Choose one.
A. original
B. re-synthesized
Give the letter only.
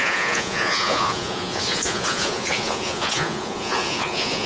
B